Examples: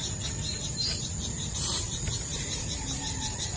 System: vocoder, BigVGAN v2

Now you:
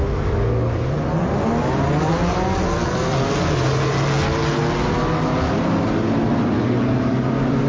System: none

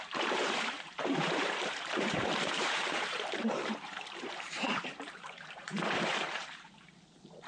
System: vocoder, BigVGAN v2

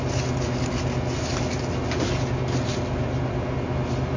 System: none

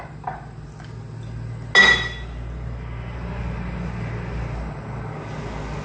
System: none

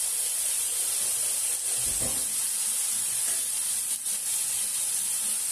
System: none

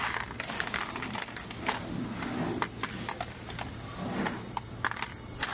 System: none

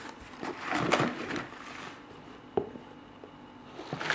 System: none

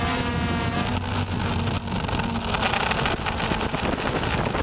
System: none